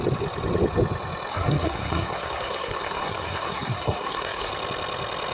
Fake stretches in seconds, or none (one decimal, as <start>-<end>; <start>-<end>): 1.3-4.5